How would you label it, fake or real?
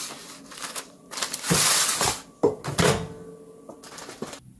real